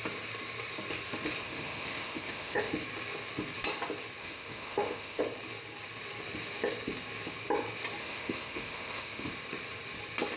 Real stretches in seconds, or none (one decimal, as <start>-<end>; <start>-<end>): 0.0-1.4; 2.7-4.2; 5.2-8.0; 9.3-10.4